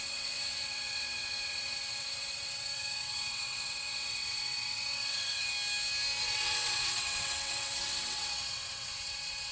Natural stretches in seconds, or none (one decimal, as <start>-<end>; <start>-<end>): 5.5-6.2